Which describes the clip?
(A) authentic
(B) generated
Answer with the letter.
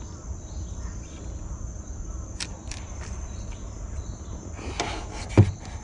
A